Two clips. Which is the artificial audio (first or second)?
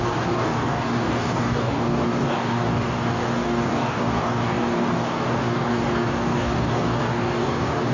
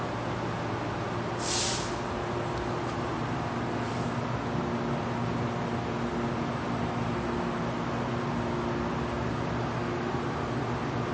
first